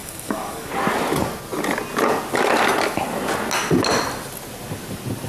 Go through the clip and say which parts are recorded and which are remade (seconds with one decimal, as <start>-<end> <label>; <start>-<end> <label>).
0.0-0.7 remade; 0.7-5.3 recorded